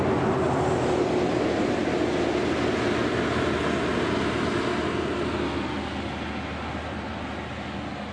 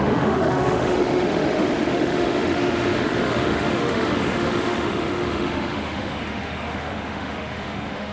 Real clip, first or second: first